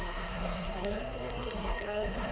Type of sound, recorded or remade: remade